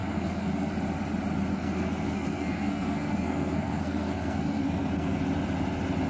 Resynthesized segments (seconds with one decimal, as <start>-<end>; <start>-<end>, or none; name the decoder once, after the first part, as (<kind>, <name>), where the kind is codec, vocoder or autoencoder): 0.0-0.7 (codec, SNAC); 1.5-5.2